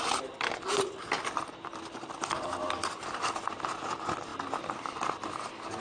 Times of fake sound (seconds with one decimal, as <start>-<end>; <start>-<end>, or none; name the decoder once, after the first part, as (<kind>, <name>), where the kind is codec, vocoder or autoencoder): 1.2-3.2 (vocoder, BigVGAN v2); 4.3-5.1